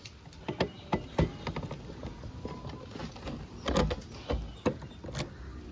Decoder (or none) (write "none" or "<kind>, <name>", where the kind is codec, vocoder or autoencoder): none